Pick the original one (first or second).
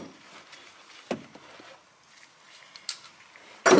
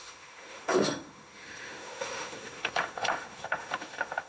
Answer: first